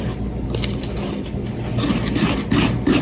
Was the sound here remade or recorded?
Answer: recorded